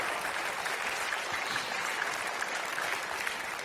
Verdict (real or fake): real